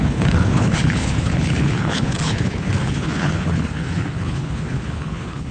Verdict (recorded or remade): remade